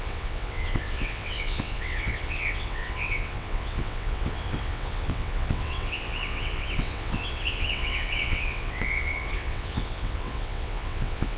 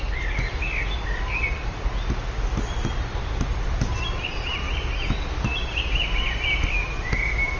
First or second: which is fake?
first